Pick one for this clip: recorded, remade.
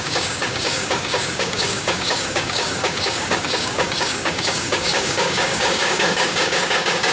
remade